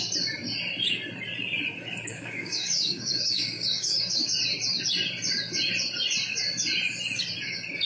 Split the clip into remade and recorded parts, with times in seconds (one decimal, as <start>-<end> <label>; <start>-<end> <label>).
0.0-2.1 recorded; 2.1-4.3 remade; 4.3-7.8 recorded